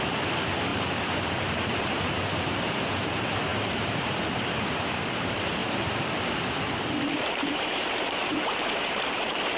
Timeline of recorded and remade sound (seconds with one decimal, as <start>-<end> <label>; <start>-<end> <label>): 0.0-5.6 remade; 5.6-7.1 recorded; 7.1-9.6 remade